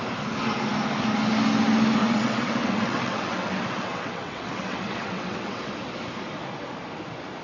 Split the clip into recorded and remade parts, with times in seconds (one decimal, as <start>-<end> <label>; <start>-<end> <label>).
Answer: 0.0-2.0 recorded; 2.0-5.7 remade; 5.7-7.4 recorded